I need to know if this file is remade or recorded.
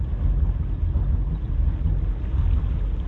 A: recorded